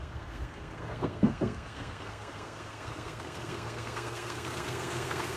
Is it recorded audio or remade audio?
remade